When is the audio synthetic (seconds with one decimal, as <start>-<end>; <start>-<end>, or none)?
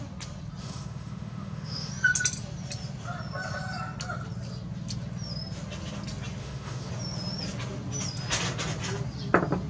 0.6-1.9; 6.4-6.9